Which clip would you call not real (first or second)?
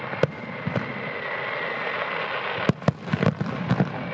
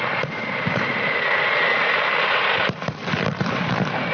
second